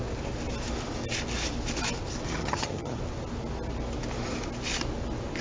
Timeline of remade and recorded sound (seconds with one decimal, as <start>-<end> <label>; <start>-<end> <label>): 0.0-2.4 recorded; 2.4-3.0 remade; 3.0-5.4 recorded